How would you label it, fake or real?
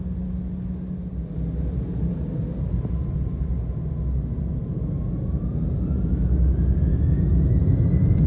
real